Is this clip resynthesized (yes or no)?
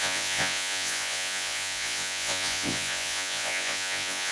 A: yes